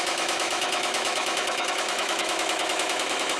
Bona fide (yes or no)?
no